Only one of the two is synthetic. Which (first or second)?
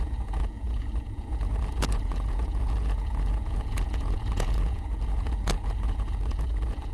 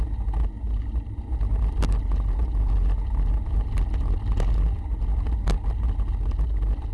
first